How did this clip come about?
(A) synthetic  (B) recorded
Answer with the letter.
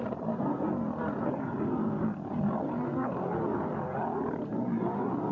B